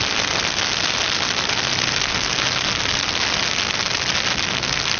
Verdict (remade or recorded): recorded